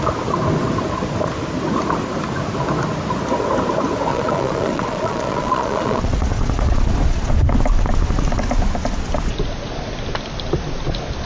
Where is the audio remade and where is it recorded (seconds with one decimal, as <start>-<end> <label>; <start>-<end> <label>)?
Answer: 0.0-4.1 recorded; 4.1-7.3 remade; 7.3-11.3 recorded